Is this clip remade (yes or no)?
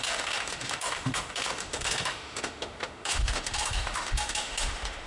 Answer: yes